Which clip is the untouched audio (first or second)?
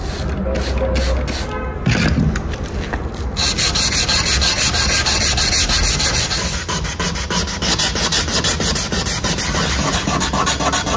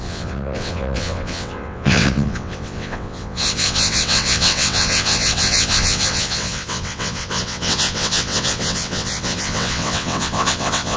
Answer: first